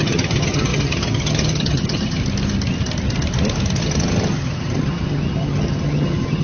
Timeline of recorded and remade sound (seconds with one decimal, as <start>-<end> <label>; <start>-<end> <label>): 0.0-2.2 remade; 2.2-3.8 recorded; 3.8-6.4 remade